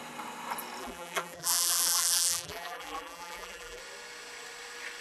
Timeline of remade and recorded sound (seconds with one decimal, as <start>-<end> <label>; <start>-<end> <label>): 0.0-0.8 recorded; 0.8-3.8 remade; 3.8-5.0 recorded